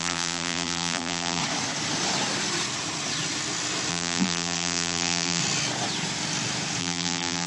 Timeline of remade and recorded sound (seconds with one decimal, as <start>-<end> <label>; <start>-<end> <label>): 0.0-1.4 remade; 1.4-3.9 recorded; 3.9-5.4 remade; 5.4-6.8 recorded; 6.8-7.5 remade